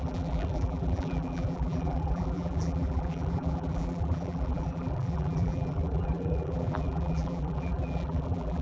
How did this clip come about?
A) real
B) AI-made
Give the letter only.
B